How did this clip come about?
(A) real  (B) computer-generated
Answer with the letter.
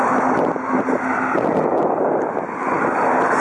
A